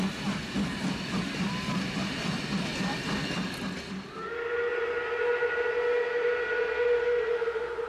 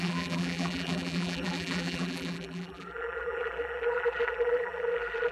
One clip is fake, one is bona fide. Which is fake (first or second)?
second